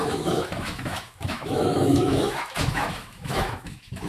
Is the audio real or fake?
fake